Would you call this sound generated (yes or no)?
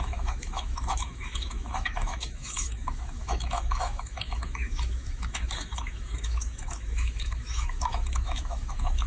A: yes